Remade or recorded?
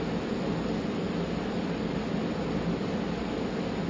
recorded